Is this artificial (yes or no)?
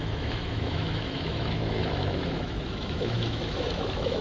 yes